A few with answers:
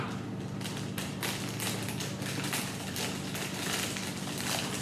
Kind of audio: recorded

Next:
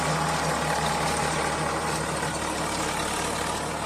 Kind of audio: recorded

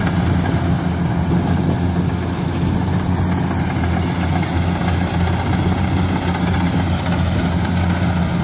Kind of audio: recorded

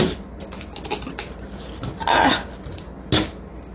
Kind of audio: recorded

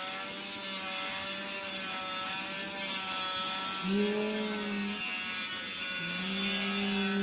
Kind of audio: recorded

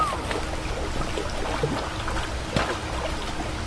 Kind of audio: recorded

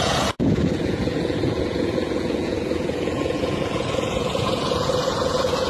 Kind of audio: remade